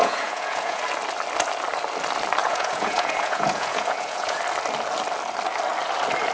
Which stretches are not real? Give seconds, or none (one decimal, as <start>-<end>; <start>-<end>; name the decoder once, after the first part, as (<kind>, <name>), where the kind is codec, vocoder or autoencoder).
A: 0.0-0.8 (vocoder, Vocos); 2.4-4.4